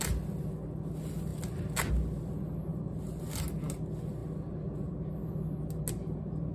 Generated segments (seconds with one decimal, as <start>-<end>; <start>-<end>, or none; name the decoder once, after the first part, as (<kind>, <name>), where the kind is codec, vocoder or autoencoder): none